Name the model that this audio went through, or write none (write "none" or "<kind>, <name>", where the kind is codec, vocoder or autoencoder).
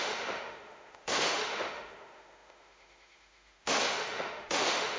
autoencoder, DAC-VAE